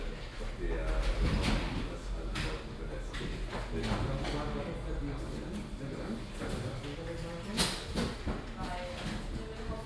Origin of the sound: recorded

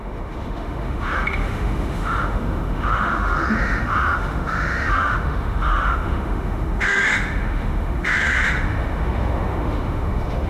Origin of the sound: remade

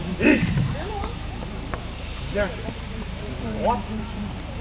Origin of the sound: remade